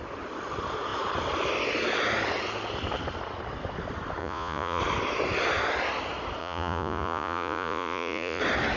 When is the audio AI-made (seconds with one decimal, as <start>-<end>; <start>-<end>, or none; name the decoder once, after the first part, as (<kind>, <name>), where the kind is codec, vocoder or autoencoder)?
4.2-4.8 (vocoder, Vocos); 6.4-8.4